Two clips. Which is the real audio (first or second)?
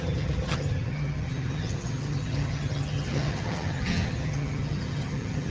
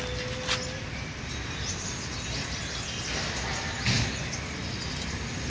second